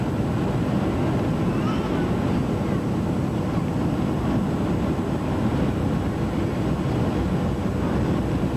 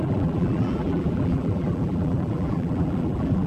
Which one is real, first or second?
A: first